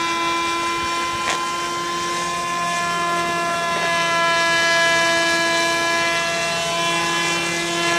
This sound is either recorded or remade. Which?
recorded